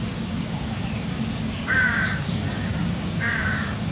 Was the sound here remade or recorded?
remade